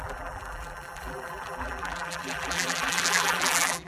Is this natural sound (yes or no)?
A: no